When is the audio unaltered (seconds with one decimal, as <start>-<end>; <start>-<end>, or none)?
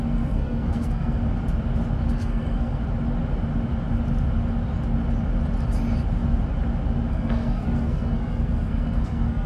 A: 1.2-2.1; 2.8-7.1